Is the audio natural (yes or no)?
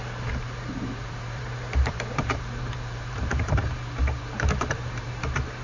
no